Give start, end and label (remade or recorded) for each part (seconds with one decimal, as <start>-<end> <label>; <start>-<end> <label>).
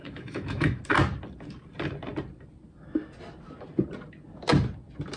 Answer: 0.0-0.8 remade; 0.8-5.2 recorded